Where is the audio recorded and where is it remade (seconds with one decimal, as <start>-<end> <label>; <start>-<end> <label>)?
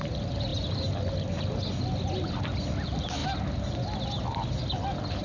0.0-5.2 recorded